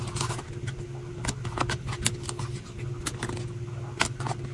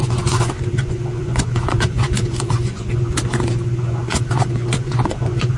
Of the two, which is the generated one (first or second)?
second